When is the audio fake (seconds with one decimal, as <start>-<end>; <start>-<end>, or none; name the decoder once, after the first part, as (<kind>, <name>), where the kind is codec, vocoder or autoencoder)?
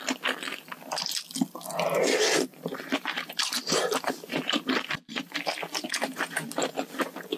2.5-6.6 (vocoder, BigVGAN v2)